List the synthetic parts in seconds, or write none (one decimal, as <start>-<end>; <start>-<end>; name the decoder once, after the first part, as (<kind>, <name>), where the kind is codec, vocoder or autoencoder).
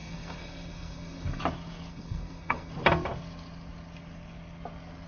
0.0-1.4 (codec, SNAC); 1.9-2.7